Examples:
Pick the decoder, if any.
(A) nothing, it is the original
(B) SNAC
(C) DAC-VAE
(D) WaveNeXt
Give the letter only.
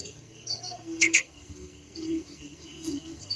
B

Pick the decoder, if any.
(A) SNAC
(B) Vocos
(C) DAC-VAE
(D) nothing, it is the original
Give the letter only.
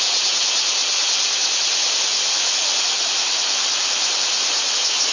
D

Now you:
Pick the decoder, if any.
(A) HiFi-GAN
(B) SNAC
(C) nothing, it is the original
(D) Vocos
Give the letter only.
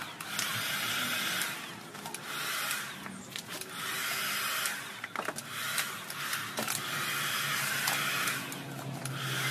C